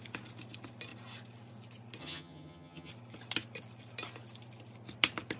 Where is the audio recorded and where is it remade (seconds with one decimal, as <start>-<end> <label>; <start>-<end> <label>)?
0.0-2.0 recorded; 2.0-2.9 remade; 2.9-5.4 recorded